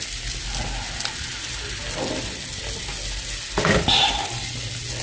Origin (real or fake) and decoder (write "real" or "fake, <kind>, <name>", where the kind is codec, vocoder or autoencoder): real